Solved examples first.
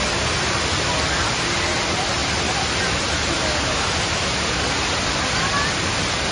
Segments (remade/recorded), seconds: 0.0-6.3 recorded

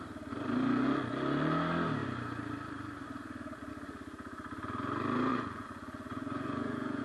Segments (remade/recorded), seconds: 0.0-5.3 recorded; 5.3-7.0 remade

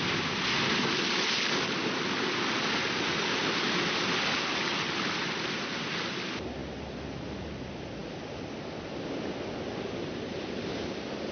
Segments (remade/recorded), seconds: 0.0-11.3 recorded

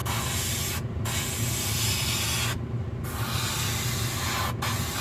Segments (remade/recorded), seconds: 0.0-5.0 recorded

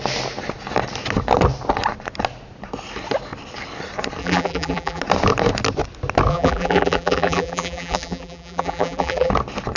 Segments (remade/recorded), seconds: 0.0-4.2 recorded; 4.2-5.0 remade; 5.0-6.3 recorded; 6.3-9.3 remade; 9.3-9.8 recorded

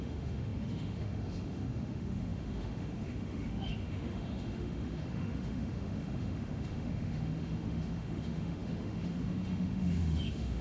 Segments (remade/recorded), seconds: 0.0-10.6 remade

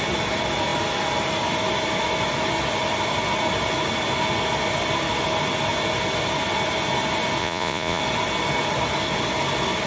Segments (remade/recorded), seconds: 0.0-7.4 recorded; 7.4-8.0 remade; 8.0-9.9 recorded

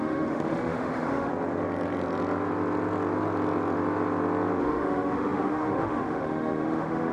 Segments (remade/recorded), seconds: 0.0-1.3 remade; 1.3-4.6 recorded; 4.6-7.1 remade